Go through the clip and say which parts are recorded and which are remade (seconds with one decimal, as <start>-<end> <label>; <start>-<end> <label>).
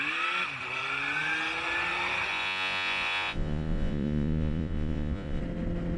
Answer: 0.0-2.3 recorded; 2.3-5.4 remade; 5.4-6.0 recorded